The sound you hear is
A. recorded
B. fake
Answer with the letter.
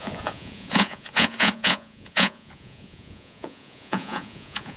B